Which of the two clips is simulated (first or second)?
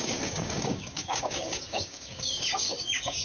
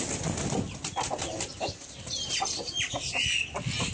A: first